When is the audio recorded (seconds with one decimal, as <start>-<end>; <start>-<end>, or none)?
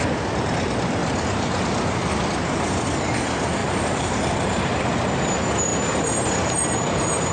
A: 0.0-1.0; 1.6-3.6; 4.6-5.7